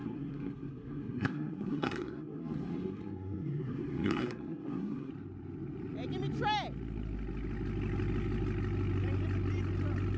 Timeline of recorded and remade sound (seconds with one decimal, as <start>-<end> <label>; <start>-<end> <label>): 0.0-5.1 remade; 5.1-10.2 recorded